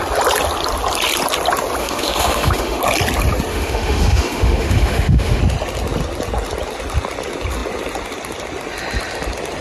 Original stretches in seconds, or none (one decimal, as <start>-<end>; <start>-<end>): 0.0-1.8; 2.8-3.5; 5.4-9.6